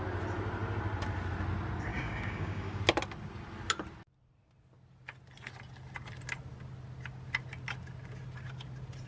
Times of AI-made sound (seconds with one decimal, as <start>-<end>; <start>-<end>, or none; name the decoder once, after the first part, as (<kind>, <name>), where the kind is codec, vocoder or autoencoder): 1.9-2.8 (codec, DAC)